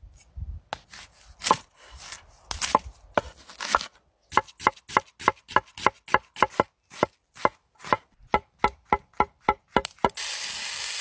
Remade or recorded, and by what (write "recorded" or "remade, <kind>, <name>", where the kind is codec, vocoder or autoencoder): recorded